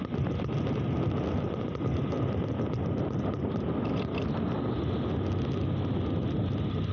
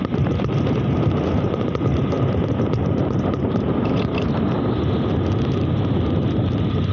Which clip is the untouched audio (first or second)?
first